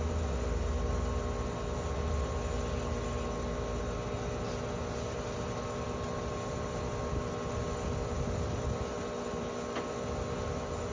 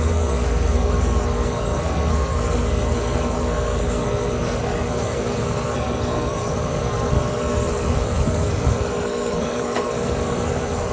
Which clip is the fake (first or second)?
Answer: second